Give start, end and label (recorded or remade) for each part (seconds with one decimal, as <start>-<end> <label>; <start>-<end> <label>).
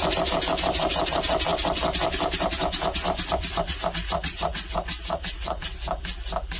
0.0-3.4 recorded; 3.4-5.6 remade; 5.6-6.6 recorded